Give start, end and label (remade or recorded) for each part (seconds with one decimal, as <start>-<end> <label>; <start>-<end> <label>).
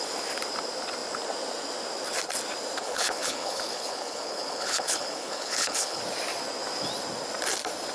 0.0-2.8 recorded; 2.8-6.0 remade; 6.0-7.9 recorded